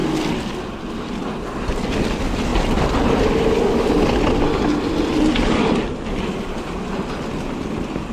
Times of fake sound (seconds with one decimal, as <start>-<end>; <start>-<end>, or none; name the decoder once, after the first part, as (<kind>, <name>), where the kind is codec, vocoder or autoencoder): none